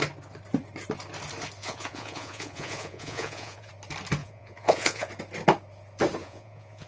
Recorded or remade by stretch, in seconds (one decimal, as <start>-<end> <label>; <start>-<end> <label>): 0.0-1.6 recorded; 1.6-3.7 remade; 3.7-4.2 recorded; 4.2-5.1 remade; 5.1-6.2 recorded; 6.2-6.9 remade